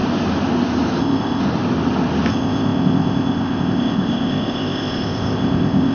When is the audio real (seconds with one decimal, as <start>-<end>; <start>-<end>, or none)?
0.0-1.0; 1.4-2.3

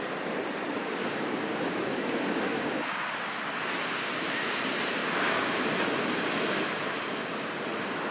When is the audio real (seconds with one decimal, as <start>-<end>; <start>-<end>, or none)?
0.0-0.8; 3.4-5.0; 5.7-8.1

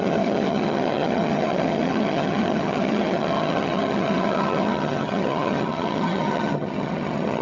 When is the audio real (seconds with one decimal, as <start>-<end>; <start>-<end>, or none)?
none